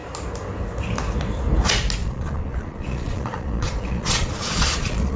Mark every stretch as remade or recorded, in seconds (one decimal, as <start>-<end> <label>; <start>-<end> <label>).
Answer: 0.0-2.0 recorded; 2.0-5.2 remade